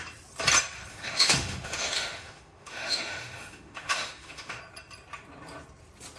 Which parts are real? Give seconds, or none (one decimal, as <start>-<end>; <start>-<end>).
0.0-0.9; 4.6-6.2